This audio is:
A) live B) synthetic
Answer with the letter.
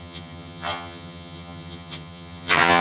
B